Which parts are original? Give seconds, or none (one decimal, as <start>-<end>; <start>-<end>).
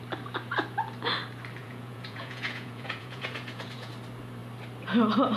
0.0-1.6; 3.9-5.4